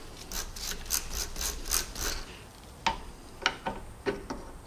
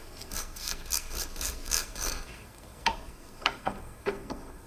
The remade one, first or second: second